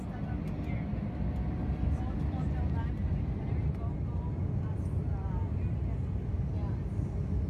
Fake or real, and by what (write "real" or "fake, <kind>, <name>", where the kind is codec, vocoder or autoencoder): real